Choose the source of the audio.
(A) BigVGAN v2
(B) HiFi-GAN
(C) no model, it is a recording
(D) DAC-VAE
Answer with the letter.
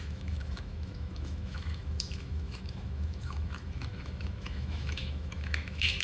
D